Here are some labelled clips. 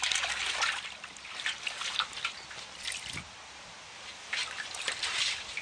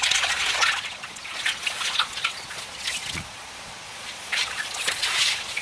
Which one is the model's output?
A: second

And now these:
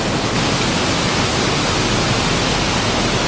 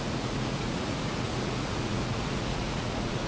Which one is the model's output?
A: second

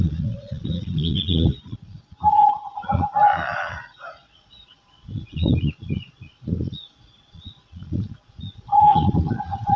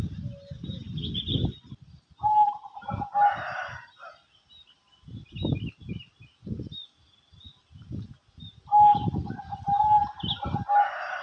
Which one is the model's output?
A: first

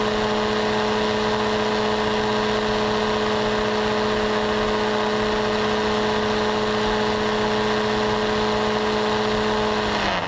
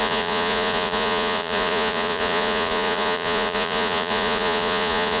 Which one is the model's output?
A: second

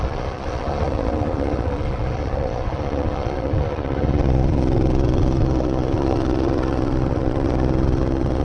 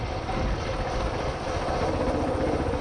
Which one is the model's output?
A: first